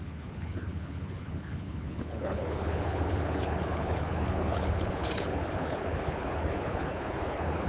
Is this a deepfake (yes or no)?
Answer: yes